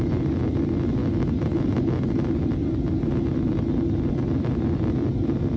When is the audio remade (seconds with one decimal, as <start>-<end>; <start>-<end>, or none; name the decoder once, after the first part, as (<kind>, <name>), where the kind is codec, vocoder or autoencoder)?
none